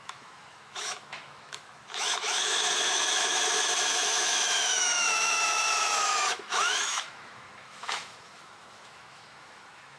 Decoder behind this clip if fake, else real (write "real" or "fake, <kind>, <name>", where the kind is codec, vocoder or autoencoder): fake, autoencoder, DAC-VAE